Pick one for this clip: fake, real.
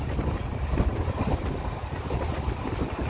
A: real